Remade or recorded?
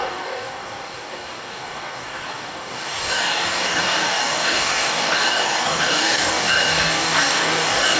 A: remade